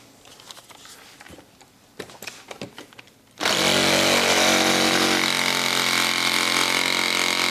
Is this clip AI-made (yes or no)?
no